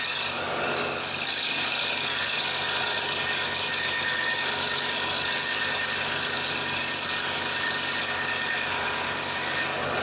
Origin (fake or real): fake